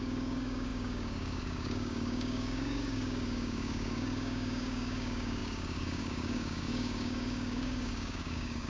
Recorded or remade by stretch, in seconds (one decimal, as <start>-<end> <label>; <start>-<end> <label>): 0.0-8.7 remade